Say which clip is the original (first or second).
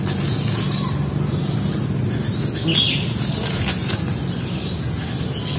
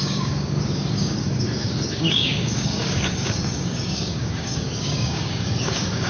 first